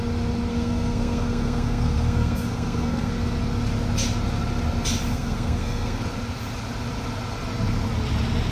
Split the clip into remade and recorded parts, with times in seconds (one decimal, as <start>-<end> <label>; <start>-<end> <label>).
0.0-0.5 recorded; 0.5-3.1 remade; 3.1-5.1 recorded; 5.1-6.0 remade; 6.0-8.5 recorded